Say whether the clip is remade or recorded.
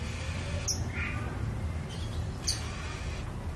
recorded